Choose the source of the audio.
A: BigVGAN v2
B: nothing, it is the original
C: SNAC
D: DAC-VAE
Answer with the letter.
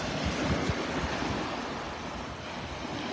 B